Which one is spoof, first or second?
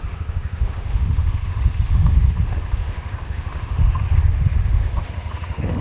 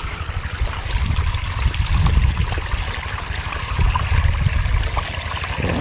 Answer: first